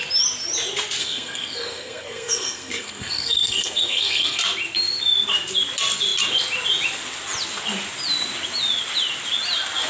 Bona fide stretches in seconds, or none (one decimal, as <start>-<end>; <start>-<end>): 0.0-1.0; 4.4-9.9